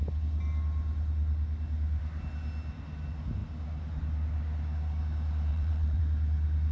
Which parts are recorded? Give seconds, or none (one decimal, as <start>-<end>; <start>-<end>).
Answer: 0.0-5.5; 6.0-6.7